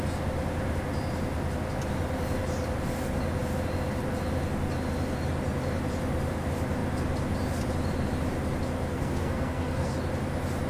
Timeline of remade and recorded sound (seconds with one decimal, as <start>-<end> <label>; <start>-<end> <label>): 0.0-8.9 recorded; 8.9-9.9 remade; 9.9-10.7 recorded

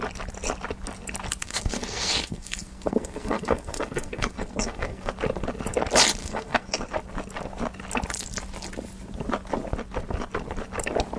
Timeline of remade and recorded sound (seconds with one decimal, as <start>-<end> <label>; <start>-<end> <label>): 0.0-1.4 recorded; 1.4-5.1 remade; 5.1-6.2 recorded; 6.2-6.9 remade; 6.9-11.2 recorded

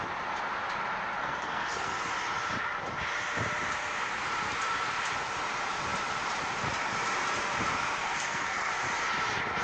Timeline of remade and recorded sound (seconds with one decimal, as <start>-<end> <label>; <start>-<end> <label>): 0.0-1.2 recorded; 1.2-2.0 remade; 2.0-8.0 recorded; 8.0-8.7 remade; 8.7-9.6 recorded

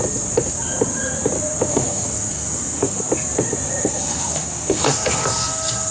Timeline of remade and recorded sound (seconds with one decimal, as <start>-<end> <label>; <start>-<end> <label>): 0.0-1.7 recorded; 1.7-3.0 remade; 3.0-3.8 recorded; 3.8-5.9 remade

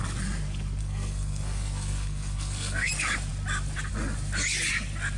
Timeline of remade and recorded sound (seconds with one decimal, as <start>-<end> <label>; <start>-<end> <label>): 0.0-0.8 recorded; 0.8-2.9 remade; 2.9-5.2 recorded

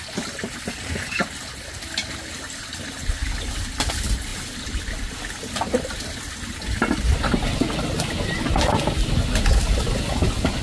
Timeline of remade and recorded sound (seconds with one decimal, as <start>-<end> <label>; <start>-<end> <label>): 0.0-10.6 recorded